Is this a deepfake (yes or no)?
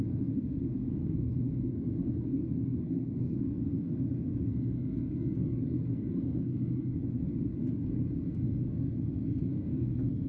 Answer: yes